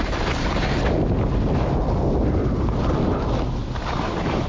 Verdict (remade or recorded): recorded